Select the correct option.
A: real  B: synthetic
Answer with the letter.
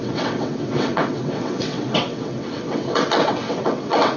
B